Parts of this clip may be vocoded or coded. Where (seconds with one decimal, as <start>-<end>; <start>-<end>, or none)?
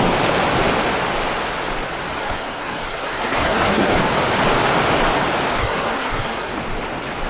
2.2-4.0; 5.6-6.5